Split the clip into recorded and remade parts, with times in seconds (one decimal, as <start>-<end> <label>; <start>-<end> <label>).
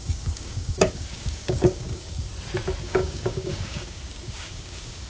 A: 0.0-2.3 remade; 2.3-2.8 recorded; 2.8-5.1 remade